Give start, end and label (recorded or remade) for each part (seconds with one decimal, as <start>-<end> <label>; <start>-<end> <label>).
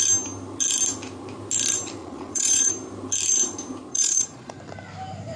0.0-2.0 recorded; 2.0-2.7 remade; 2.7-3.9 recorded; 3.9-4.5 remade; 4.5-5.4 recorded